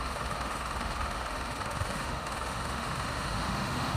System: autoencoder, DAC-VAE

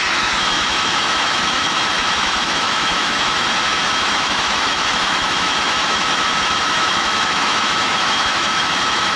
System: autoencoder, DAC-VAE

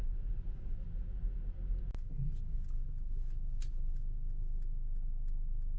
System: none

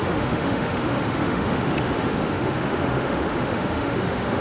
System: autoencoder, DAC-VAE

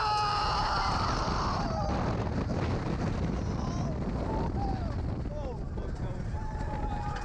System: none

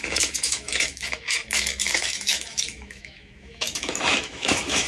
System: autoencoder, DAC-VAE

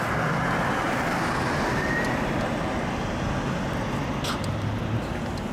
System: none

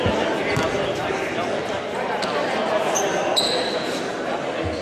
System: none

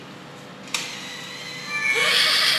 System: none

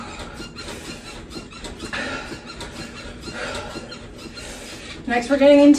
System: none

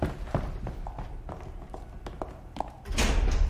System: none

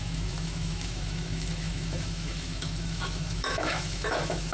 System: autoencoder, DAC-VAE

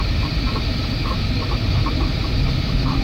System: none